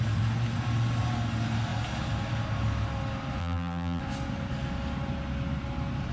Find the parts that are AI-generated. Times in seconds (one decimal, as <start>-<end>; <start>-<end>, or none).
3.4-4.0